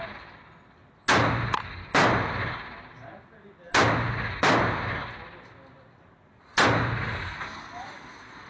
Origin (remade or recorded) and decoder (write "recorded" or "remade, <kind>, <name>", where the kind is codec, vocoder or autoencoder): recorded